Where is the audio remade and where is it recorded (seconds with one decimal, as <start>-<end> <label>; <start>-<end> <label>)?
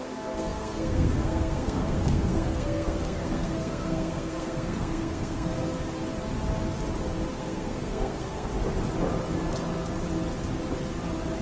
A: 0.0-5.6 remade; 5.6-7.3 recorded; 7.3-8.5 remade; 8.5-11.4 recorded